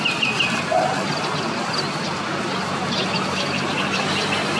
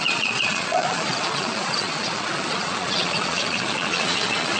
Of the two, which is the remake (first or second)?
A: second